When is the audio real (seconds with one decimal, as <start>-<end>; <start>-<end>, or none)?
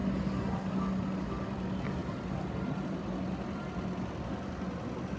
0.0-5.2